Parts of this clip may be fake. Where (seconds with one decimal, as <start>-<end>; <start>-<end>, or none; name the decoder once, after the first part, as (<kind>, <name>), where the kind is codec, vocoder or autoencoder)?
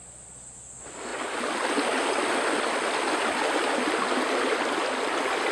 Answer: none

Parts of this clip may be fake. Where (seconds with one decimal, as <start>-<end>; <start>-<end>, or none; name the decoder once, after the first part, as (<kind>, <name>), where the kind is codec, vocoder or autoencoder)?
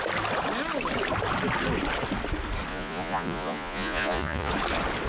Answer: 2.7-4.5 (vocoder, Vocos)